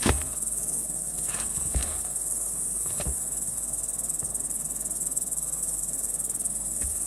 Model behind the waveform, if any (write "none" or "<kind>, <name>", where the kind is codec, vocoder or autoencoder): codec, SNAC